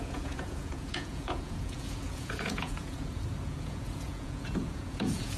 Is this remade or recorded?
remade